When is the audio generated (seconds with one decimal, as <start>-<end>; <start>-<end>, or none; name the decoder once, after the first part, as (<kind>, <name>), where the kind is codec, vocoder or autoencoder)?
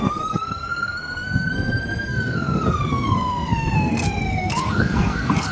0.0-5.5 (codec, SNAC)